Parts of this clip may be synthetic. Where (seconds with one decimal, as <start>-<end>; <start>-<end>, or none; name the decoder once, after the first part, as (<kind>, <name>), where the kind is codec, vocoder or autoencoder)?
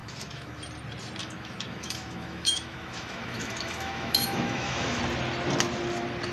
0.0-0.6 (autoencoder, DAC-VAE); 1.2-5.0